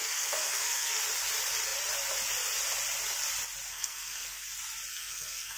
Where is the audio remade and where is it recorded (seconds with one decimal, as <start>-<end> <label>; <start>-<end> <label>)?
0.0-1.0 remade; 1.0-3.7 recorded; 3.7-4.5 remade; 4.5-4.9 recorded; 4.9-5.6 remade

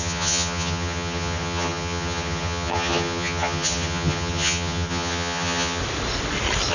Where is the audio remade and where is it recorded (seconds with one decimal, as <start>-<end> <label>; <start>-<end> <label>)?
0.0-5.8 remade; 5.8-6.7 recorded